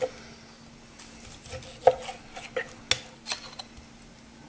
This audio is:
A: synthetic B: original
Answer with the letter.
B